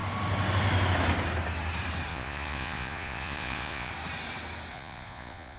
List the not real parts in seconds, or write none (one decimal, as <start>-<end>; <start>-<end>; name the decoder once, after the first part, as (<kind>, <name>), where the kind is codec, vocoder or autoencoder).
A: 2.1-3.9 (vocoder, Vocos); 4.7-5.6